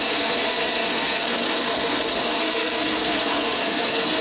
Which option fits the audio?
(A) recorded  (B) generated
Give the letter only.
B